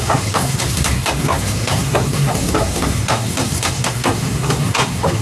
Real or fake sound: fake